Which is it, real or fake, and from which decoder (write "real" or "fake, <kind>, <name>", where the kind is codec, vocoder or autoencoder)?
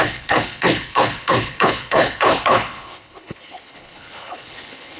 fake, codec, HILCodec